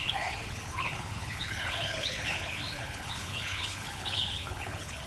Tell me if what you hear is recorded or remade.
remade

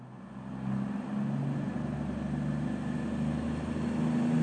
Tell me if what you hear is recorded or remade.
recorded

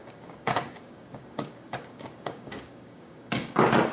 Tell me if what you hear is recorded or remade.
remade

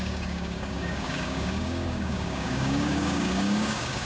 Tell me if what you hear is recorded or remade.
remade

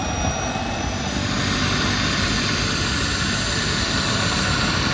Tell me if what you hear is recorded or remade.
recorded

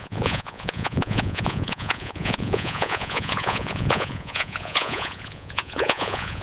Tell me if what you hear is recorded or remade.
remade